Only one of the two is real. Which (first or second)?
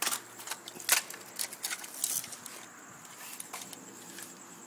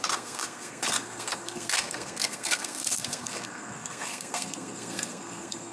first